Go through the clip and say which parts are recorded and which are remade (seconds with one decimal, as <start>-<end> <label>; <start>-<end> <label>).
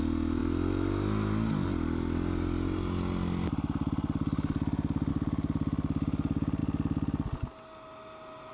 0.0-8.5 recorded